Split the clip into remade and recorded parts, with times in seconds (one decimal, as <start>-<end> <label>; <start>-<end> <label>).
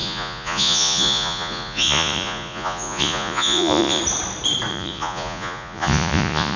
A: 0.0-4.0 remade; 4.0-4.7 recorded; 4.7-6.6 remade